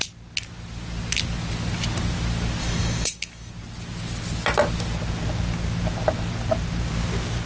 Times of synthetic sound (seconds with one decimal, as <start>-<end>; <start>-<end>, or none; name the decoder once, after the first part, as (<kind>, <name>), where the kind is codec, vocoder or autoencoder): 2.6-3.5 (codec, DAC)